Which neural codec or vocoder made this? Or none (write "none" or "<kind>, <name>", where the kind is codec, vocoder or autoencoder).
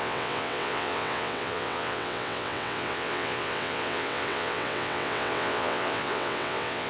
vocoder, WaveNeXt